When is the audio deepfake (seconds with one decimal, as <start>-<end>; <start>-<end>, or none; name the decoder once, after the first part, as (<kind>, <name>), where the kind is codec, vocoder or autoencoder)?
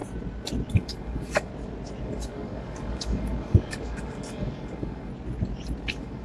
0.7-1.5 (codec, DAC); 2.0-5.1; 5.8-6.2